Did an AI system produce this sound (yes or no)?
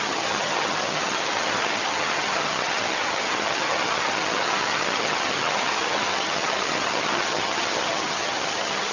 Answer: yes